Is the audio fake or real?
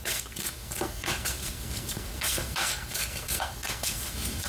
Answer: fake